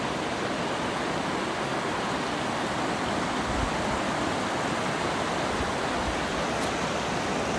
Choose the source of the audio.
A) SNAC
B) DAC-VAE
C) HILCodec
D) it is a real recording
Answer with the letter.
D